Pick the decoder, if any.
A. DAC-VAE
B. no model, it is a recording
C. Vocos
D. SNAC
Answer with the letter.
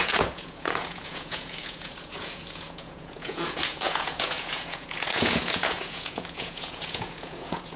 C